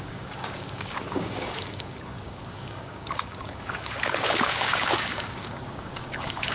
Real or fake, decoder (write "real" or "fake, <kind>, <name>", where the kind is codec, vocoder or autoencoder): fake, codec, DAC